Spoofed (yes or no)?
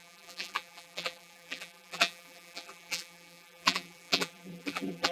yes